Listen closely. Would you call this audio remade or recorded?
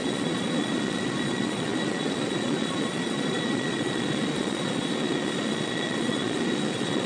remade